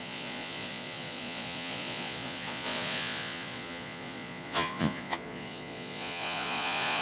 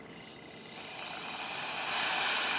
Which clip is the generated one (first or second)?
first